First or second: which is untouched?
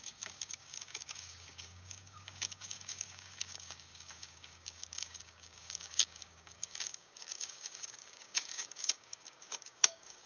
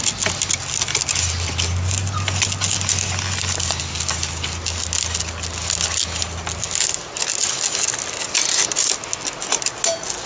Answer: second